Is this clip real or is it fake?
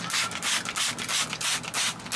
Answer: real